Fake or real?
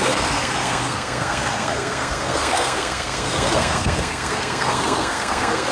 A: fake